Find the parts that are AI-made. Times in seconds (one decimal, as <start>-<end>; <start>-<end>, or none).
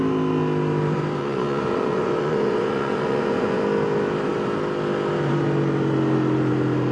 1.2-3.6